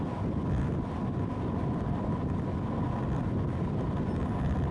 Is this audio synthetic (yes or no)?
no